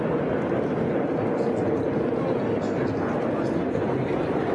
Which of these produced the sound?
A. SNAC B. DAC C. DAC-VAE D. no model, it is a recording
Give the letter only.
D